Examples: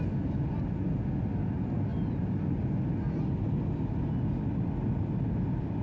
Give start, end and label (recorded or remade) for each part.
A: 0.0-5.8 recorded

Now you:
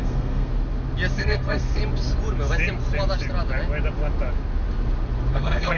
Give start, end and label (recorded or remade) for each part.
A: 0.0-0.5 remade; 0.5-1.1 recorded; 1.1-1.8 remade; 1.8-5.3 recorded; 5.3-5.8 remade

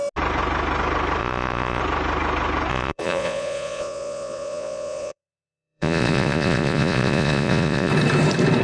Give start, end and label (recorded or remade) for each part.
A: 0.0-1.2 recorded; 1.2-1.8 remade; 1.8-2.7 recorded; 2.7-7.9 remade; 7.9-8.6 recorded

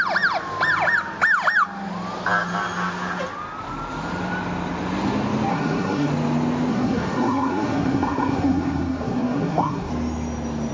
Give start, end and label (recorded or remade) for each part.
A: 0.0-5.5 recorded; 5.5-6.1 remade; 6.1-6.7 recorded; 6.7-9.9 remade; 9.9-10.7 recorded

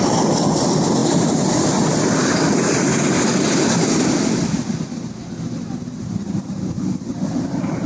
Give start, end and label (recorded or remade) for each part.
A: 0.0-7.9 recorded

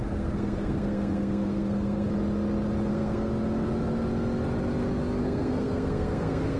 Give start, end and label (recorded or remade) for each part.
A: 0.0-2.1 remade; 2.1-2.9 recorded; 2.9-3.3 remade; 3.3-5.2 recorded; 5.2-6.6 remade

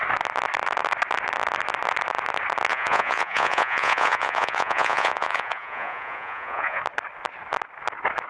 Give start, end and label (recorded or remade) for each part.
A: 0.0-2.7 recorded; 2.7-6.8 remade; 6.8-8.3 recorded

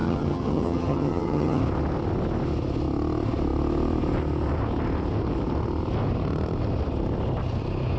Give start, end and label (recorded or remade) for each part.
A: 0.0-1.6 remade; 1.6-8.0 recorded